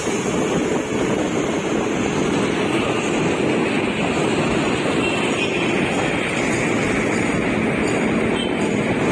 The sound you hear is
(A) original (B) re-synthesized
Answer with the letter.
A